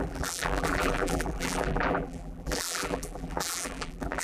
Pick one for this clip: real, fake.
fake